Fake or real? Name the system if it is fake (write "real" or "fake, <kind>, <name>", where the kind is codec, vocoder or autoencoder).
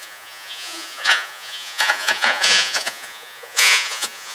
fake, vocoder, Vocos